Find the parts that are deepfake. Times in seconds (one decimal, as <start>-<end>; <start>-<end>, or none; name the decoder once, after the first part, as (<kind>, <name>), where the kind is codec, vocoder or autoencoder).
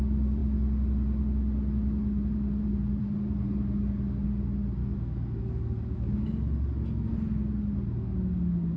4.8-5.4 (autoencoder, DAC-VAE)